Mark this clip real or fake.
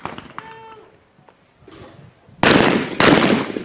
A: real